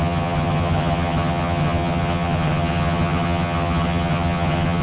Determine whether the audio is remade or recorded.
remade